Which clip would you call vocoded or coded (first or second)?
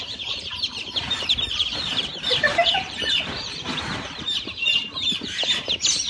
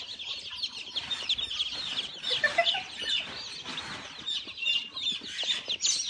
first